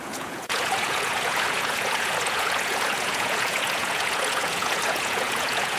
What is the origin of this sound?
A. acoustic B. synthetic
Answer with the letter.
B